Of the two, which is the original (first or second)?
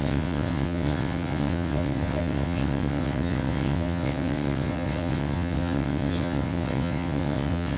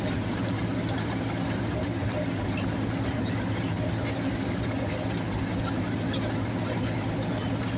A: second